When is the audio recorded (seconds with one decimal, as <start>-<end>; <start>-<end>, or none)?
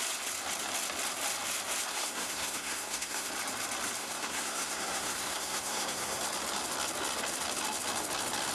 0.0-1.9; 3.3-4.0; 6.2-8.5